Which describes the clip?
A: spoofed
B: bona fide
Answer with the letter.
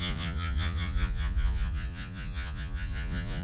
A